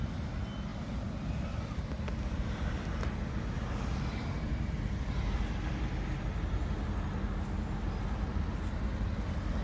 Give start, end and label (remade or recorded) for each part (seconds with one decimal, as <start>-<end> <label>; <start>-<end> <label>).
0.0-0.7 recorded; 0.7-5.4 remade; 5.4-9.6 recorded